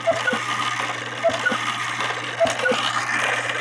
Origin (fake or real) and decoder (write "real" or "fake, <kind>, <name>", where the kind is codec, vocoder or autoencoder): real